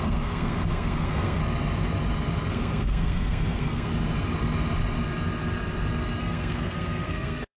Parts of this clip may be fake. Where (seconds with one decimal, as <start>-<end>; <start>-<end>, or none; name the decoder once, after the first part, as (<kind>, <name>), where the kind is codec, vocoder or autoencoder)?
0.0-1.4 (codec, SNAC); 2.5-3.9; 6.2-7.6